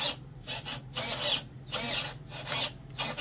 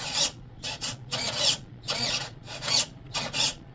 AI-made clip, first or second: second